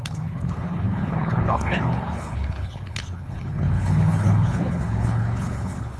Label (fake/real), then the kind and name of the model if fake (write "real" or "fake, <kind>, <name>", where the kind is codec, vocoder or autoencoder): fake, codec, HILCodec